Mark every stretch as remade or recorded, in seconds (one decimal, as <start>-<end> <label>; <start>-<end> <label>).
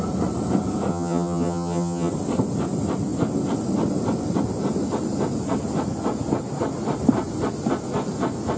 0.0-0.9 recorded; 0.9-2.1 remade; 2.1-8.6 recorded